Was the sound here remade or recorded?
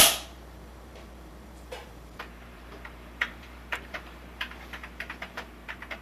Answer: remade